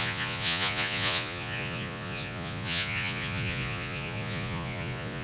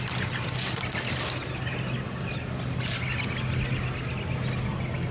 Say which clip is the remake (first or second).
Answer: first